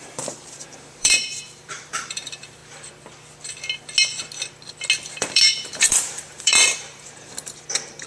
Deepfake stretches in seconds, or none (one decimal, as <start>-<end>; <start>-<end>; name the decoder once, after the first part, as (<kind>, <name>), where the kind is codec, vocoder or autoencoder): 0.0-2.6 (vocoder, BigVGAN v2); 5.2-8.1